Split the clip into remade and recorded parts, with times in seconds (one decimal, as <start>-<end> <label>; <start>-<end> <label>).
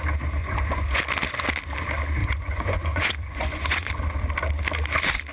0.0-0.4 recorded; 0.4-1.0 remade; 1.0-2.2 recorded; 2.2-3.9 remade; 3.9-5.3 recorded